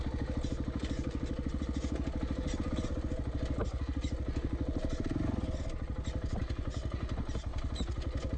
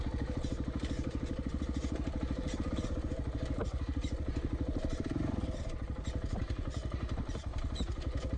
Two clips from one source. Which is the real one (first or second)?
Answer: first